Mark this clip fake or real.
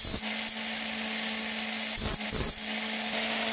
real